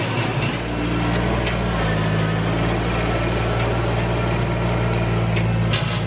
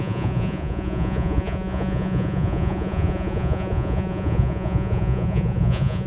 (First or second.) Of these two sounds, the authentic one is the first